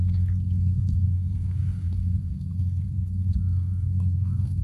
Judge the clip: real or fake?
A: fake